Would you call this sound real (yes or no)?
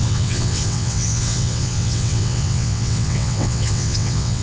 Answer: no